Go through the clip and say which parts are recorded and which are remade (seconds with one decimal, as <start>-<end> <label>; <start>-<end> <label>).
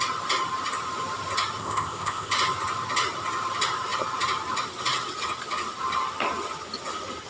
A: 0.0-1.6 recorded; 1.6-2.3 remade; 2.3-7.3 recorded